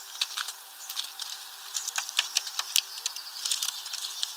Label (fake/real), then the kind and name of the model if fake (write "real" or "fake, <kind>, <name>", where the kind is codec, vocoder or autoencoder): real